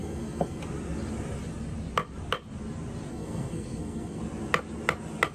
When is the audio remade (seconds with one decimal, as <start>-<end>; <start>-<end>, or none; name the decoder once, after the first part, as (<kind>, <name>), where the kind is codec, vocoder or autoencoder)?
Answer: 0.0-0.6 (codec, SNAC); 3.1-4.2